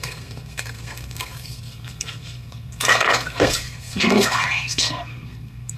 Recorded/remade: remade